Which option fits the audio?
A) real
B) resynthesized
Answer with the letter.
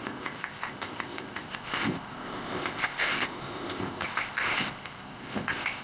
B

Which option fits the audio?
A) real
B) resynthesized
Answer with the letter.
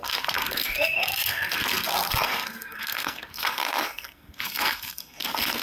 B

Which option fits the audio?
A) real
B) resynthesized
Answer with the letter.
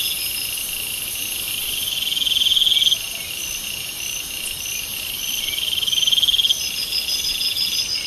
A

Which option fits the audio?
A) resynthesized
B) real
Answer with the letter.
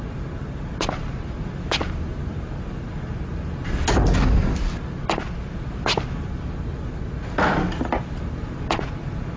B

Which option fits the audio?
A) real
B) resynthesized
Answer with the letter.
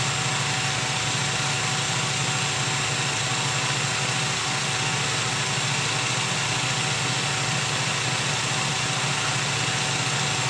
A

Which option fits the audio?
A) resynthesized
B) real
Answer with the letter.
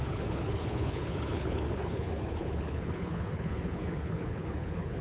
A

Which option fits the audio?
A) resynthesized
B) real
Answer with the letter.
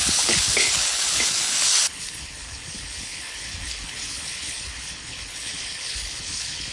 A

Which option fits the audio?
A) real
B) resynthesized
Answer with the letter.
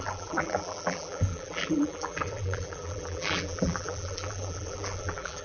B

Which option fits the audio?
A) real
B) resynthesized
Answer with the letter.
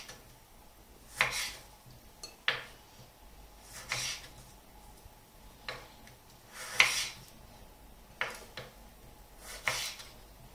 A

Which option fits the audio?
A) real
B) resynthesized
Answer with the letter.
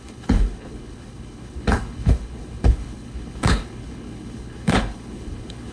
B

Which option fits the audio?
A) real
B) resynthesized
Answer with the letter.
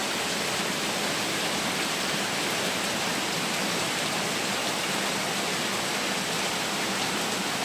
A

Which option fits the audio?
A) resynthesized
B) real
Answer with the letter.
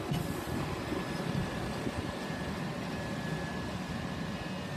B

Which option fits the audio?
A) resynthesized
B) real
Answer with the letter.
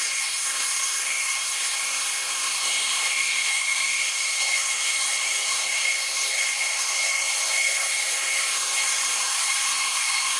A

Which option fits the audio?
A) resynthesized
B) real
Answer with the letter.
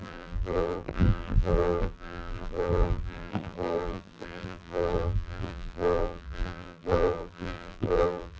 A